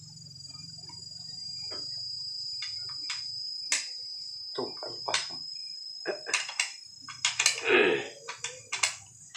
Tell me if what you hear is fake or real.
real